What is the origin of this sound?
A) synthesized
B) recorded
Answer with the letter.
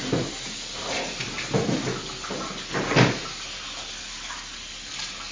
B